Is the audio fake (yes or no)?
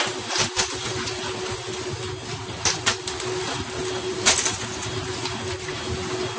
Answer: no